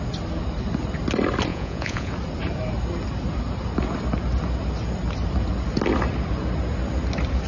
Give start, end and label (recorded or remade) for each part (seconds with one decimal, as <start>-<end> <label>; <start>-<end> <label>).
0.0-1.5 recorded; 1.5-2.1 remade; 2.1-7.5 recorded